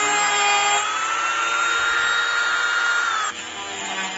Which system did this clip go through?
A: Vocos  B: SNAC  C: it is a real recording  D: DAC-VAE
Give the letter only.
C